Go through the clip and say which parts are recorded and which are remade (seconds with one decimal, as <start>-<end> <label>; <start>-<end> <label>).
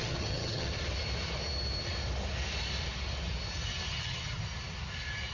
0.0-0.7 remade; 0.7-3.9 recorded; 3.9-4.4 remade; 4.4-5.3 recorded